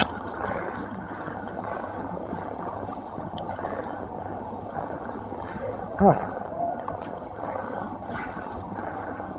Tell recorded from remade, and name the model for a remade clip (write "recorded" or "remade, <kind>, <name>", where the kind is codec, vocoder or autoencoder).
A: remade, vocoder, HiFi-GAN